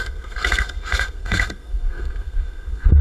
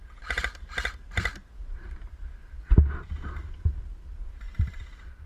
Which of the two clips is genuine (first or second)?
second